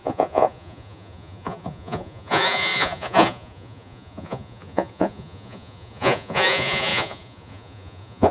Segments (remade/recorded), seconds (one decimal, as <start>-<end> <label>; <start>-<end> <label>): 0.0-8.3 remade